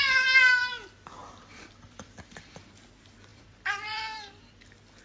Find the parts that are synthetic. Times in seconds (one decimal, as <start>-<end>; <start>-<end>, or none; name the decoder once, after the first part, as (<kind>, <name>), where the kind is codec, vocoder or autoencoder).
1.2-2.6 (vocoder, BigVGAN v2); 3.3-4.3